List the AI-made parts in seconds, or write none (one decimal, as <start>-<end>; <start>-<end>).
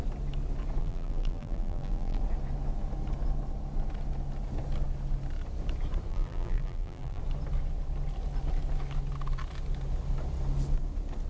0.8-2.2; 6.1-7.2